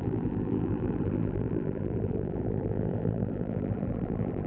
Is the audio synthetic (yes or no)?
yes